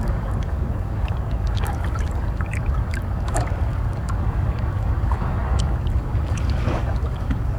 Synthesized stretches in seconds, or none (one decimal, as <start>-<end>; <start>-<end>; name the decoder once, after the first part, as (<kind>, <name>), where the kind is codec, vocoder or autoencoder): 0.0-7.6 (codec, DAC)